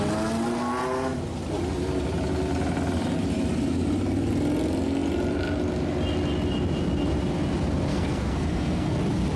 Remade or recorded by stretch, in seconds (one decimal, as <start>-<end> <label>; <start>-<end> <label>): 0.0-7.9 recorded; 7.9-9.0 remade; 9.0-9.4 recorded

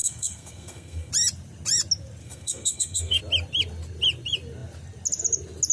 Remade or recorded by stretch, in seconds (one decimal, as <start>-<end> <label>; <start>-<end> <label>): 0.0-1.1 remade; 1.1-2.2 recorded; 2.2-3.2 remade; 3.2-5.7 recorded

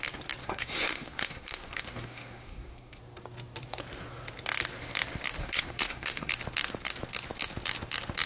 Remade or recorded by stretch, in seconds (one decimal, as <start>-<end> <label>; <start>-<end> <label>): 0.0-0.4 recorded; 0.4-3.0 remade; 3.0-5.4 recorded; 5.4-6.3 remade; 6.3-8.3 recorded

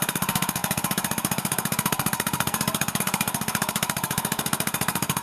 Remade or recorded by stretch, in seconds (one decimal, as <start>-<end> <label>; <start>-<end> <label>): 0.0-5.2 remade

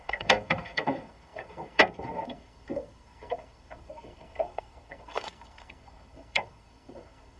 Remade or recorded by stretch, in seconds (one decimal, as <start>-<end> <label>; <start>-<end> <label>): 0.0-7.4 remade